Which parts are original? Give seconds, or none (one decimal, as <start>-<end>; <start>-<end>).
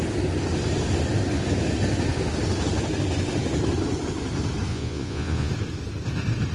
0.0-4.7; 5.5-6.5